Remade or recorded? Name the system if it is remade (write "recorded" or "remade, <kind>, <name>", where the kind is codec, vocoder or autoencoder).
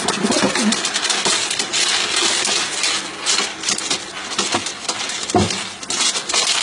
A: recorded